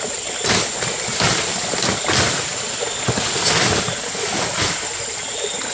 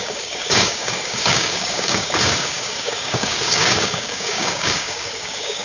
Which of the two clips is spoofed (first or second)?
second